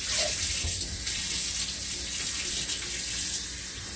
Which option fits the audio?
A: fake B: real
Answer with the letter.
B